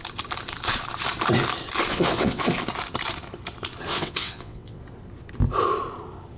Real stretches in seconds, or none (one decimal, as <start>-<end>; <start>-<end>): 0.0-1.9; 2.4-3.9; 4.8-6.4